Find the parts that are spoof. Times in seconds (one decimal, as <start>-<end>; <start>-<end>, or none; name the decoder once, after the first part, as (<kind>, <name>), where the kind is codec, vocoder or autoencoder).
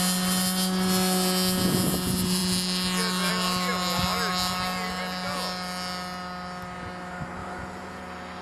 7.4-8.0 (vocoder, Vocos)